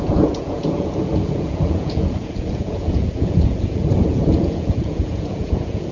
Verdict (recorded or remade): remade